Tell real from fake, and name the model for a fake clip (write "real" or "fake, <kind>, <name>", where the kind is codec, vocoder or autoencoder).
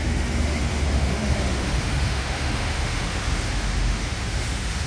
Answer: fake, autoencoder, DAC-VAE